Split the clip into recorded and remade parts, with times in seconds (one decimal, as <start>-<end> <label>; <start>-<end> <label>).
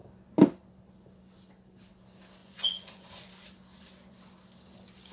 0.0-2.4 recorded; 2.4-3.3 remade; 3.3-5.1 recorded